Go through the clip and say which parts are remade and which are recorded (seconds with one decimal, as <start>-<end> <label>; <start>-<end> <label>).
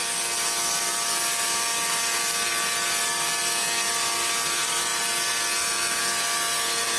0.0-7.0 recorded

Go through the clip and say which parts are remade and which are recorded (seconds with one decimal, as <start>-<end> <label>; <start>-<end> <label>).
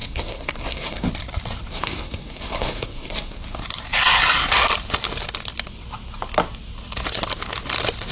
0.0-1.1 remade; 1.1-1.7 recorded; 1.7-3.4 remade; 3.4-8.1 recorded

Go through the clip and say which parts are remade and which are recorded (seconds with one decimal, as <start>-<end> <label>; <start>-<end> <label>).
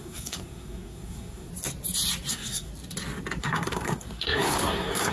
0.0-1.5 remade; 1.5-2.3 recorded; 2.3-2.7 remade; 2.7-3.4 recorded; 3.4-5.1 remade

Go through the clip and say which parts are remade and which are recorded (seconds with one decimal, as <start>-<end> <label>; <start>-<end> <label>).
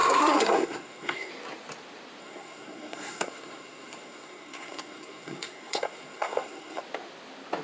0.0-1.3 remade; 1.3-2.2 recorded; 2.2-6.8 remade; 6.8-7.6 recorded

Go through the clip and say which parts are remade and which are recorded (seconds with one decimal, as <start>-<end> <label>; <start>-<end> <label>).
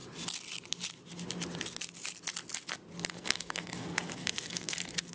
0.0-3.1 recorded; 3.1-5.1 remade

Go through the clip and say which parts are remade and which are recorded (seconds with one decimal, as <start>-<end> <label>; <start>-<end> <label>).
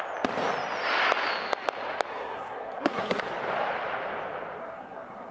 0.0-2.1 recorded; 2.1-3.2 remade; 3.2-4.6 recorded; 4.6-5.3 remade